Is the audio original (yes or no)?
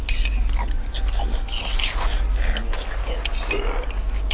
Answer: yes